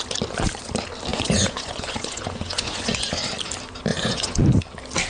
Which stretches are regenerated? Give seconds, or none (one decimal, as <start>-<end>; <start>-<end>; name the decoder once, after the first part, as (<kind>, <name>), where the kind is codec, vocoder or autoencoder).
1.1-3.3 (vocoder, Vocos); 3.9-4.4

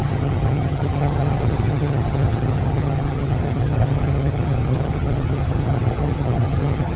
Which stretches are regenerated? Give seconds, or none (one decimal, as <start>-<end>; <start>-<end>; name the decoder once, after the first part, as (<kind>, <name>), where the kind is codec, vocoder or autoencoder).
0.0-7.0 (vocoder, HiFi-GAN)

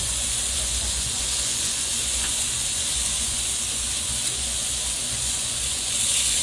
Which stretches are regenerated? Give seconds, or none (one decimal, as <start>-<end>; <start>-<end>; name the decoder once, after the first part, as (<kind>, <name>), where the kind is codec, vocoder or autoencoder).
0.0-6.4 (vocoder, Vocos)

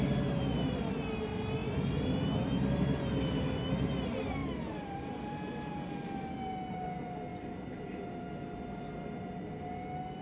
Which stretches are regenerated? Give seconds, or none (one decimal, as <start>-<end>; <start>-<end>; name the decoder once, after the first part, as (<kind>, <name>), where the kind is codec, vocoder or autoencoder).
1.6-2.4 (vocoder, BigVGAN v2); 4.4-5.7; 7.3-7.8

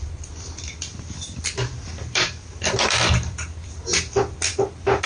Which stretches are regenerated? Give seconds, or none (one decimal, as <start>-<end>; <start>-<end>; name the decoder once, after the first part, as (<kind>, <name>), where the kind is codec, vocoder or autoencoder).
0.9-3.7 (vocoder, BigVGAN v2)

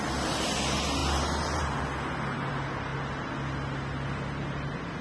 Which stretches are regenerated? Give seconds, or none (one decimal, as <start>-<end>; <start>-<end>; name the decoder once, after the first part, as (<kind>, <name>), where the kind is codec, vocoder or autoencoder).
none